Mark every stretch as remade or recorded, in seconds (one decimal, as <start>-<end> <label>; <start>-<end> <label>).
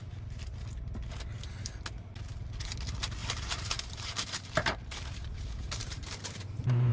0.0-3.2 recorded; 3.2-6.9 remade